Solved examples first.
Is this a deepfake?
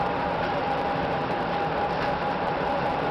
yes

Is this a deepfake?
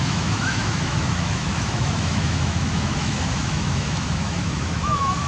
yes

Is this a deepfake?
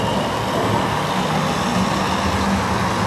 no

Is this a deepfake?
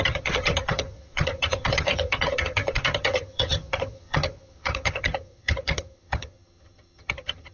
yes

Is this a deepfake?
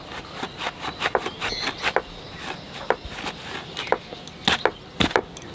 no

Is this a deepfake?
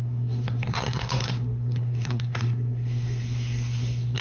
yes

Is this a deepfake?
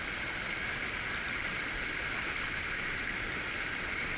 no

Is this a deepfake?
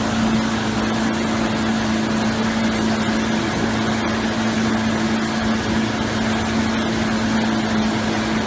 no